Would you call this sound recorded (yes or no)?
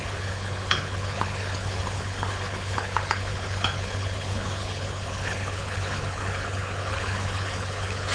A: no